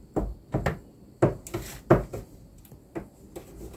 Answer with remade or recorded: recorded